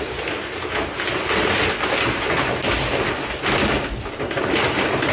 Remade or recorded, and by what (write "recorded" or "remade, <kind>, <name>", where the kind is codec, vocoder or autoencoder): recorded